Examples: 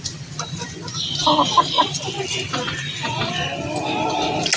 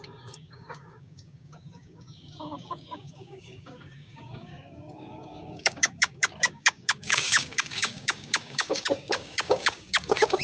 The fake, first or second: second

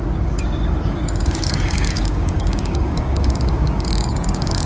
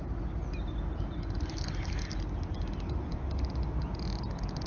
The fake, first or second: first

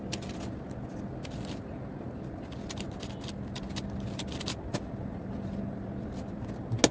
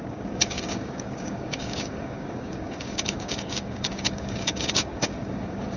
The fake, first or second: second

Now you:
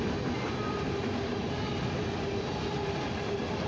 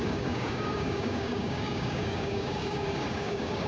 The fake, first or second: second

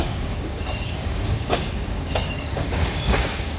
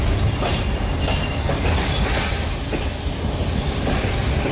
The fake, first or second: first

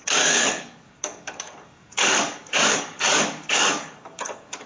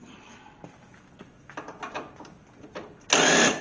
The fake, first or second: first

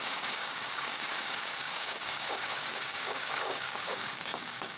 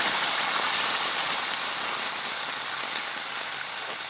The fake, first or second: first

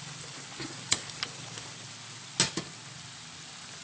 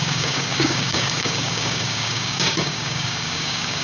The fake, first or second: second